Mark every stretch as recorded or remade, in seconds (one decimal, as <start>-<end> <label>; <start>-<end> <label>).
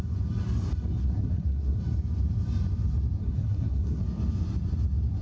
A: 0.0-1.0 recorded; 1.0-1.8 remade; 1.8-3.2 recorded; 3.2-4.0 remade; 4.0-5.2 recorded